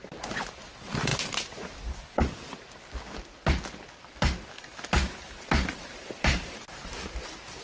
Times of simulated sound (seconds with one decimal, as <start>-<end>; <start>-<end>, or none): none